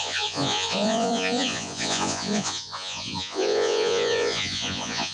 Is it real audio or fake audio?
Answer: fake